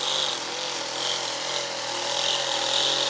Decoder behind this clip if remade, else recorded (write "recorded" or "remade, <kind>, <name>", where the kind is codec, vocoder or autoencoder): recorded